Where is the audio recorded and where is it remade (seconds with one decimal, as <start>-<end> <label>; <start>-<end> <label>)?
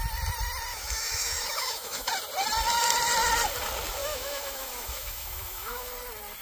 0.0-0.7 recorded; 0.7-2.1 remade; 2.1-4.0 recorded; 4.0-5.9 remade; 5.9-6.4 recorded